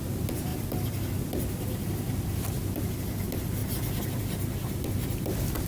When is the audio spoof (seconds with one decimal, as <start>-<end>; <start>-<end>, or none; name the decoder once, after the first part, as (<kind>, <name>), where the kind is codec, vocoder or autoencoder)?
none